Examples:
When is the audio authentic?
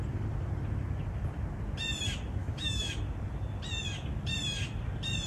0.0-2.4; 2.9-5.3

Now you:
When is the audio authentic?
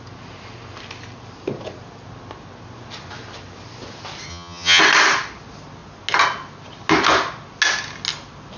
0.0-4.3; 4.8-8.6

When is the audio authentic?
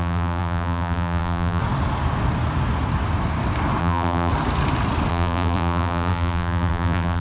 1.6-3.8; 4.3-5.1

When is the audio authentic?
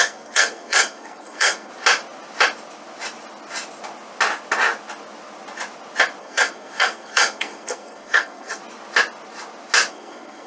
1.7-6.2; 8.6-9.9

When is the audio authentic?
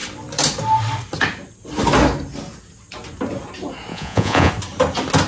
0.0-3.9; 4.5-5.3